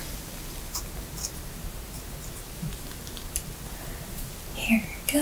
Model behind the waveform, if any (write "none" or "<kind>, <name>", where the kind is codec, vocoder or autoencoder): none